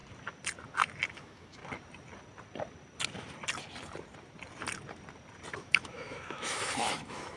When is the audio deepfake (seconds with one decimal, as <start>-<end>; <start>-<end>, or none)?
1.1-1.6; 5.6-7.4

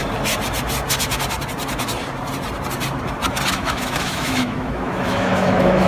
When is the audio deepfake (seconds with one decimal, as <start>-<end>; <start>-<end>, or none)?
3.5-5.9

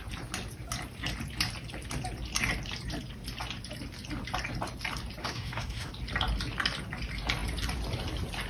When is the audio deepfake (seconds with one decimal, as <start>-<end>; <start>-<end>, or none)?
5.2-5.9

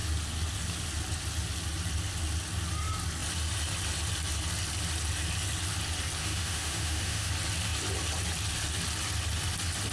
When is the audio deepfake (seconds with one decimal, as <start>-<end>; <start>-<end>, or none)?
6.2-7.3

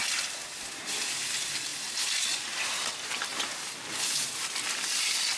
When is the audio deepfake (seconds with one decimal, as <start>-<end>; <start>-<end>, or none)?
none

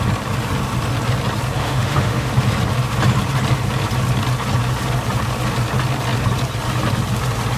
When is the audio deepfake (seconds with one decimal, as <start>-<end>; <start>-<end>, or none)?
1.6-2.3